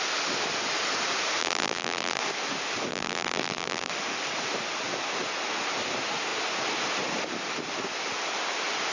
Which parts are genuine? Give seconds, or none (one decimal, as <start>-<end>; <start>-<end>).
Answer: 0.0-1.4; 2.2-2.9; 3.9-8.9